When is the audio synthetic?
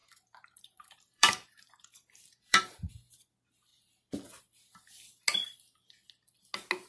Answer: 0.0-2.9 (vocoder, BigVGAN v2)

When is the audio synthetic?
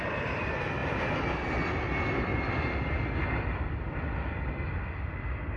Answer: none